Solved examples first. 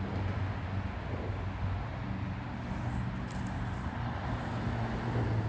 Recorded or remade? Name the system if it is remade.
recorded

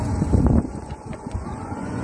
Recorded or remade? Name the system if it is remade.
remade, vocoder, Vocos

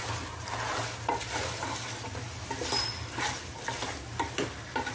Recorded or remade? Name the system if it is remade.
recorded